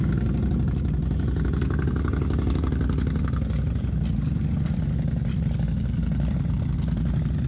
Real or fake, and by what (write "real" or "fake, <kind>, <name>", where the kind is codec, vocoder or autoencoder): real